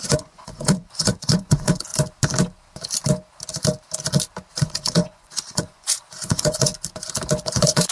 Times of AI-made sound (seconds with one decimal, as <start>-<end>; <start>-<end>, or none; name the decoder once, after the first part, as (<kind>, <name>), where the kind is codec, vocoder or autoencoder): 0.0-1.9 (vocoder, Vocos); 4.6-6.7; 7.4-7.9